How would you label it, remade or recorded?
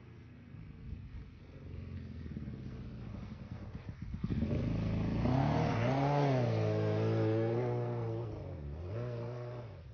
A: remade